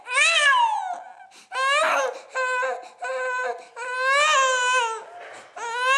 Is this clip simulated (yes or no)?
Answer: no